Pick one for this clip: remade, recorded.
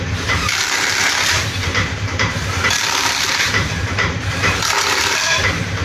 remade